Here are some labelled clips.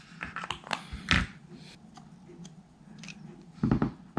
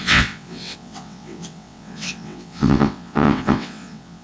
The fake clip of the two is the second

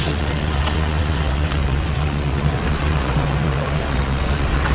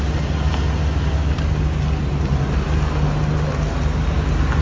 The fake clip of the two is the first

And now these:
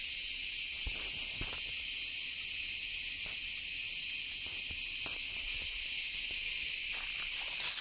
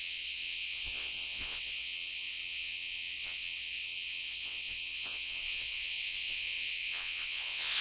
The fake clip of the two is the second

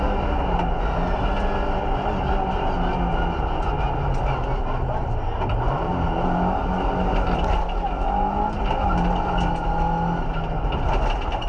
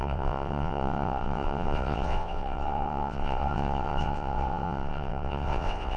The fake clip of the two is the second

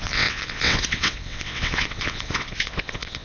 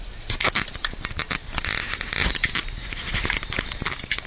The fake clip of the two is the first